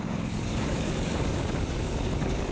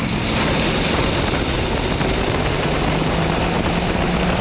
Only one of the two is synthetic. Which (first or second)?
first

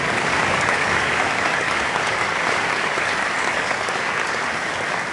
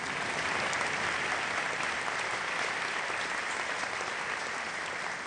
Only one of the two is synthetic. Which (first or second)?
first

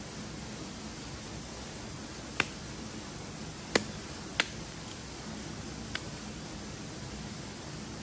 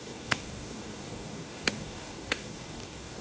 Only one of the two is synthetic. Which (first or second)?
second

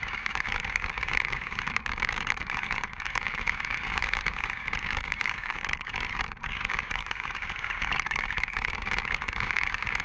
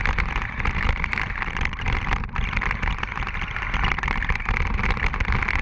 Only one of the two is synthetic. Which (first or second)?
first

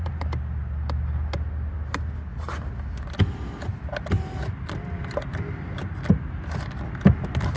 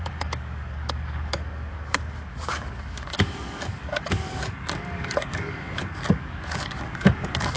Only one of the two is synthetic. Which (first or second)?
second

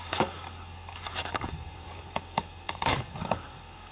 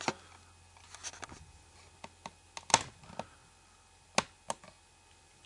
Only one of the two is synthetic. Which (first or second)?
first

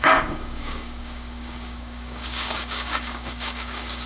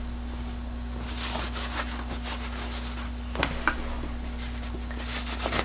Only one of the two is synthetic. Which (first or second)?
first